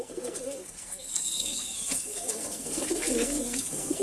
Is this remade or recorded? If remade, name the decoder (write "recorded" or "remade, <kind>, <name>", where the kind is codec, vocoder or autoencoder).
remade, codec, SNAC